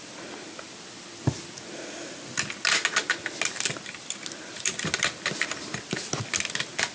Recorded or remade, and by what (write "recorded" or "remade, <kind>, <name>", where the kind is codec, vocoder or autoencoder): recorded